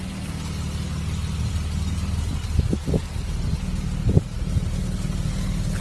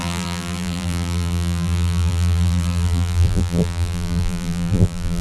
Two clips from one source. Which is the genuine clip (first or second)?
first